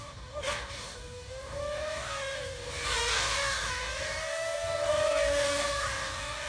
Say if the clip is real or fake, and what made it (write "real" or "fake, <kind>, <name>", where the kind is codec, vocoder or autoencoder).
fake, codec, DAC